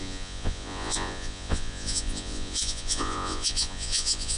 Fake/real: fake